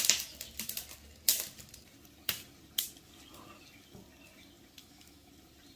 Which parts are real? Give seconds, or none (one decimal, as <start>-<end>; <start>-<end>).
0.0-4.8; 5.3-5.8